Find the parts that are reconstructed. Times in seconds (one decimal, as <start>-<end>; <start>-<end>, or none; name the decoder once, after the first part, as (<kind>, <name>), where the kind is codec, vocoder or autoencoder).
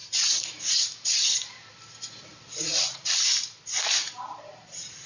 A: 2.3-3.6 (vocoder, BigVGAN v2)